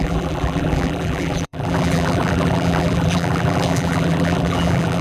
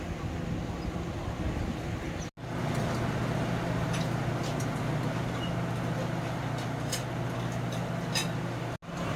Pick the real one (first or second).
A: second